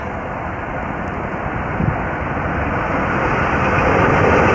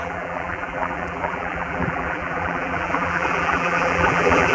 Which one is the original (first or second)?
first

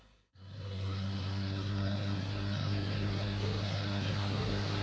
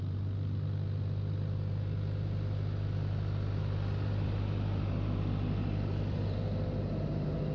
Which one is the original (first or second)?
second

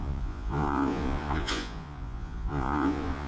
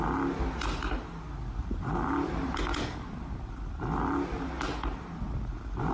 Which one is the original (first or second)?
second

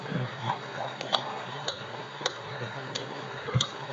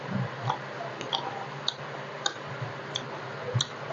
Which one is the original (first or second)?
second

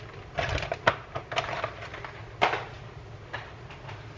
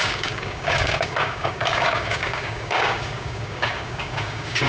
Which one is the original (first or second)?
first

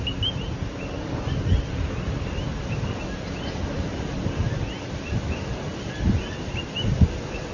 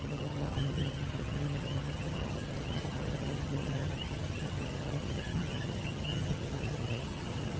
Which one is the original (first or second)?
first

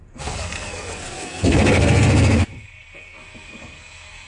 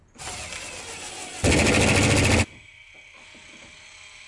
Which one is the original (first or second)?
second